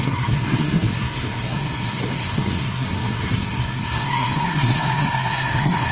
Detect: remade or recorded remade